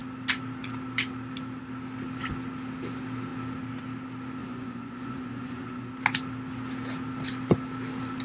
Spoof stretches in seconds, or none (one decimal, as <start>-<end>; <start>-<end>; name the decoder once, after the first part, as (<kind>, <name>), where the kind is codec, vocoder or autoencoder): 4.4-5.9 (vocoder, Vocos)